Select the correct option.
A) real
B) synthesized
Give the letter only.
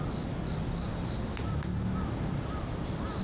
A